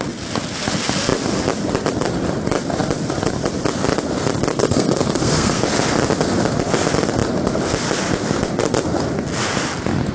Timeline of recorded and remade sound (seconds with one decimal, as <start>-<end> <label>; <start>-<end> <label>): 0.0-4.5 recorded; 4.5-5.6 remade; 5.6-10.1 recorded